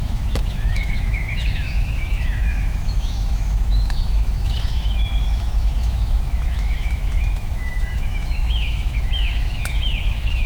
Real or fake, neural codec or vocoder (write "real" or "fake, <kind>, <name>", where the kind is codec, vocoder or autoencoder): fake, autoencoder, DAC-VAE